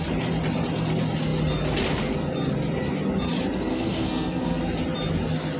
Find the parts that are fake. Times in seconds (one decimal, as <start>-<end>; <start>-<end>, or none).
3.7-4.6